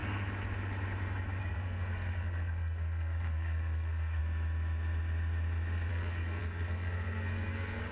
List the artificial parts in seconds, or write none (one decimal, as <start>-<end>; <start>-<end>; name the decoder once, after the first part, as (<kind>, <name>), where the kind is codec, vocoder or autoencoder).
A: 1.4-4.2 (codec, SNAC); 5.9-7.9